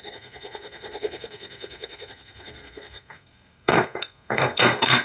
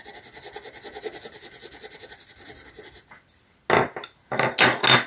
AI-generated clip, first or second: first